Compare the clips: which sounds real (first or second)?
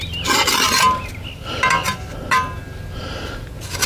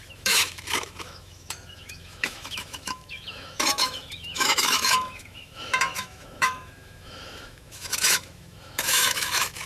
first